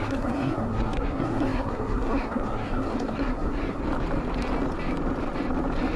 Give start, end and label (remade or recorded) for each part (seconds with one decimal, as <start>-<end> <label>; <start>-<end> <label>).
0.0-3.8 remade; 3.8-6.0 recorded